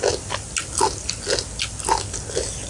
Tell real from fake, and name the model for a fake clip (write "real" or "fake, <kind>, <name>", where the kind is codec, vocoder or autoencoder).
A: real